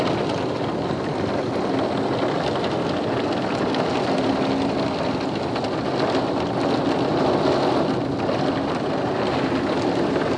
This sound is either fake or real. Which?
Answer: real